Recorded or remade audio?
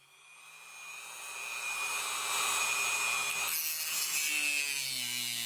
recorded